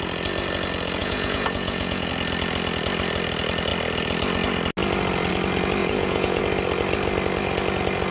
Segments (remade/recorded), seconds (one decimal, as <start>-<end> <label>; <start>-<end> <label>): 0.0-1.0 recorded; 1.0-2.1 remade; 2.1-5.8 recorded; 5.8-6.4 remade; 6.4-8.1 recorded